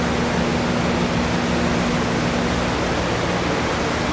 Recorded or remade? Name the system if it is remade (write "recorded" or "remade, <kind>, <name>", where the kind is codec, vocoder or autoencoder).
recorded